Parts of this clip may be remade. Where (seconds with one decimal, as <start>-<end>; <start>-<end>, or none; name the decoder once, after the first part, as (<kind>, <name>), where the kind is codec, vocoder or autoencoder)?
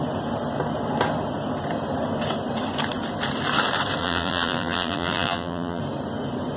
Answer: 4.0-5.8 (vocoder, BigVGAN v2)